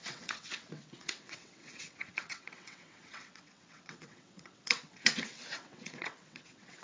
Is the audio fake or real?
fake